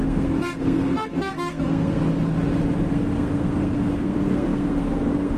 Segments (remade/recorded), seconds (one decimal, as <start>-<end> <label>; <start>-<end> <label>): 0.0-2.0 remade; 2.0-2.9 recorded; 2.9-5.4 remade

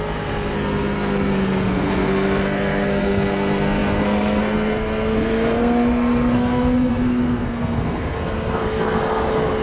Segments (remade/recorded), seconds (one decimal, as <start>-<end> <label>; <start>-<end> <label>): 0.0-9.6 remade

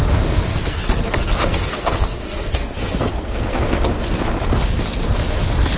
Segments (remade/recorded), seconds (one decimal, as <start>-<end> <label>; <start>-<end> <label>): 0.0-0.5 recorded; 0.5-4.0 remade; 4.0-5.8 recorded

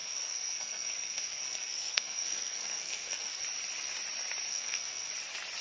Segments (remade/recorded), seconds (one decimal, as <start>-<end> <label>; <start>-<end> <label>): 0.0-3.4 remade; 3.4-4.5 recorded; 4.5-5.1 remade; 5.1-5.6 recorded

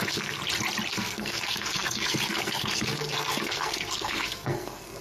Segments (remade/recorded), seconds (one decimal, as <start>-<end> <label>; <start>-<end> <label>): 0.0-0.4 remade; 0.4-0.9 recorded; 0.9-5.0 remade